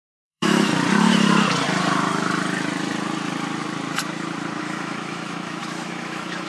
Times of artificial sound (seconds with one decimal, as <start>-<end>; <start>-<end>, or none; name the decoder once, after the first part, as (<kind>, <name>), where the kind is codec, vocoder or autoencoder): 0.0-0.7 (autoencoder, DAC-VAE); 4.6-6.5